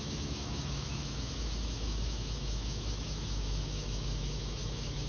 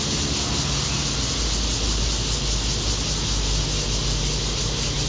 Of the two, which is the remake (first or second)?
first